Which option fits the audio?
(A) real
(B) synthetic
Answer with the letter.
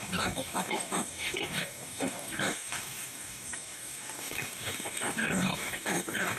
B